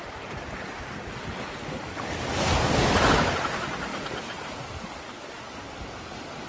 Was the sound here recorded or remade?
recorded